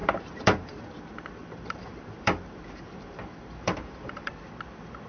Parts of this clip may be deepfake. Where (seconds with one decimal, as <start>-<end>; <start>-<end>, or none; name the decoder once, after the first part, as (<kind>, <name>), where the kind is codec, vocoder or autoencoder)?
0.0-0.8 (vocoder, BigVGAN v2); 1.4-4.3